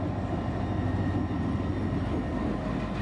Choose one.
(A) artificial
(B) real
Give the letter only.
B